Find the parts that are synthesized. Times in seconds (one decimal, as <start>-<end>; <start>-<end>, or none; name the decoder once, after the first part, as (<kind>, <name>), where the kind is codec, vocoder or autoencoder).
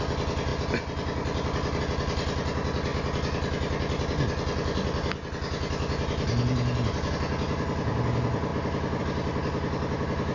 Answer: none